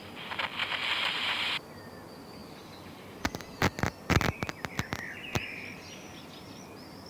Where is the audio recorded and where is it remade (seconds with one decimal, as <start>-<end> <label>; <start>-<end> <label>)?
0.0-7.1 recorded